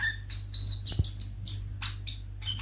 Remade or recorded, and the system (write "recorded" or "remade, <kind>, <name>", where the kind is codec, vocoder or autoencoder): recorded